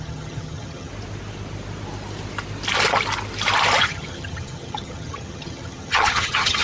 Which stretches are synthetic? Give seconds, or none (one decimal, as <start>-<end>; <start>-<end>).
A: 0.0-0.9; 3.8-6.6